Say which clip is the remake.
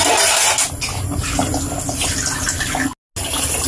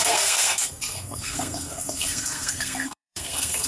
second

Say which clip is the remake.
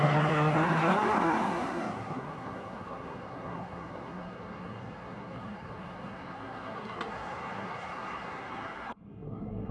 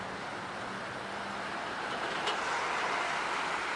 first